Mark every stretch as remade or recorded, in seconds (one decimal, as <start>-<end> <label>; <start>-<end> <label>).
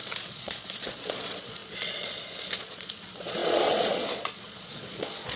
0.0-5.4 remade